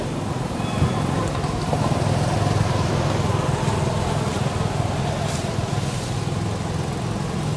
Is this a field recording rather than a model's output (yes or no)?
yes